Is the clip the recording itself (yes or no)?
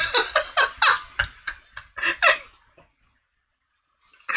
yes